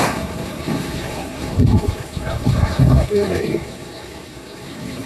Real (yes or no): no